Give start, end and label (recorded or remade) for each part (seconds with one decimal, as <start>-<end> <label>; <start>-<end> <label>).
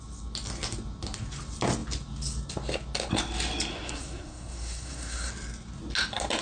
0.0-3.7 recorded; 3.7-5.3 remade; 5.3-6.4 recorded